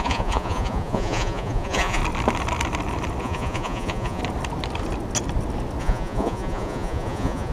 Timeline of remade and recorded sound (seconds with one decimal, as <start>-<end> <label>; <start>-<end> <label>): 0.0-2.0 remade; 2.0-3.2 recorded; 3.2-4.2 remade; 4.2-5.8 recorded; 5.8-7.5 remade

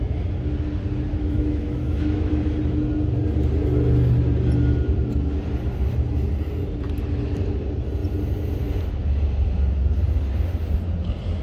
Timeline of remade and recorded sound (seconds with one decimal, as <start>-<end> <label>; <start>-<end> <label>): 0.0-1.1 recorded; 1.1-2.3 remade; 2.3-11.4 recorded

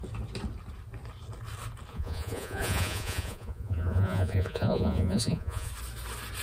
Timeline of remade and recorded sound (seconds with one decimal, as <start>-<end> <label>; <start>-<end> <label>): 0.0-1.9 recorded; 1.9-5.7 remade; 5.7-6.4 recorded

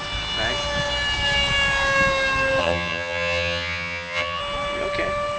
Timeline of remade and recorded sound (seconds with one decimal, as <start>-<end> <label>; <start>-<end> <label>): 0.0-2.6 recorded; 2.6-4.4 remade; 4.4-5.4 recorded

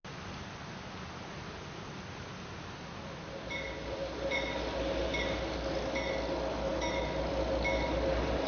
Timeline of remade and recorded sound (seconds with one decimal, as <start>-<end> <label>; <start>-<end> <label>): 0.0-8.5 recorded

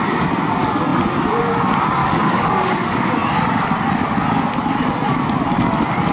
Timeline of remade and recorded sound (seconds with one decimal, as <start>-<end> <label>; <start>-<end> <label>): 0.0-2.0 recorded; 2.0-3.1 remade; 3.1-6.1 recorded

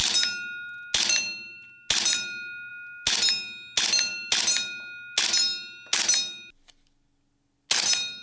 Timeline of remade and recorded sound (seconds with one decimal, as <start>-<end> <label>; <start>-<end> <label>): 0.0-8.2 recorded